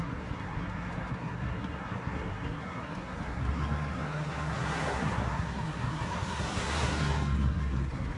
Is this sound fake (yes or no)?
yes